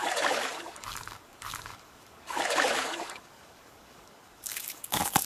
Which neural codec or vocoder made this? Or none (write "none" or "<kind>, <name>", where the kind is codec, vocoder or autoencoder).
codec, DAC